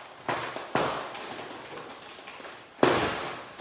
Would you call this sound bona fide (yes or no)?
yes